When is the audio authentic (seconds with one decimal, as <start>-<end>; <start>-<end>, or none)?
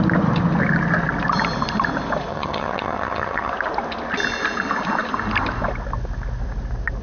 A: 0.0-2.3; 3.5-7.0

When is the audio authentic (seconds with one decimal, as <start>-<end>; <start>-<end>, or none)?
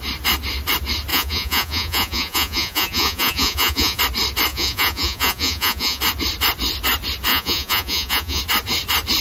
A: 0.0-1.1; 4.0-4.5; 6.0-7.3; 8.4-9.2